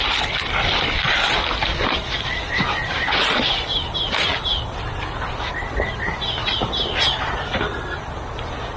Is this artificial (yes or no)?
no